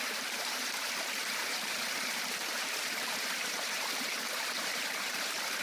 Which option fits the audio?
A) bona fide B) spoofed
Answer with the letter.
B